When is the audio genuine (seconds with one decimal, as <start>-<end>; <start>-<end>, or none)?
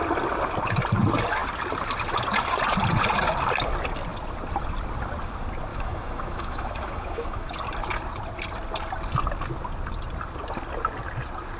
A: 0.0-5.7; 7.5-11.6